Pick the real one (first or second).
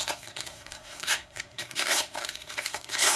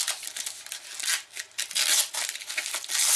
second